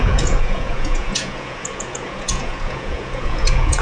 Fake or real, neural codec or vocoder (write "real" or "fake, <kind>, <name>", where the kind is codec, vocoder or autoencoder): fake, vocoder, Vocos